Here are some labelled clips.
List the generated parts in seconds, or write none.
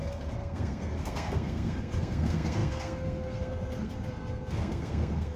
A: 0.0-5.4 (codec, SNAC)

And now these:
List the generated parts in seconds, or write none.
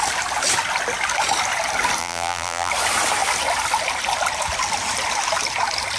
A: 2.0-2.7 (vocoder, BigVGAN v2)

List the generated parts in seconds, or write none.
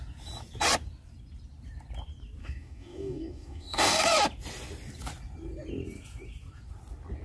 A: 2.4-4.0 (codec, DAC)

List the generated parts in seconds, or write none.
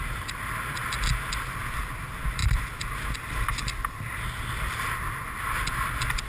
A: none